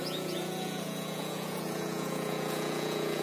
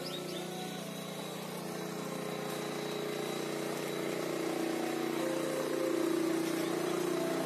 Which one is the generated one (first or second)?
first